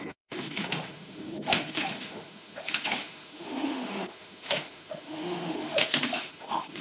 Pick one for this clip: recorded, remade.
remade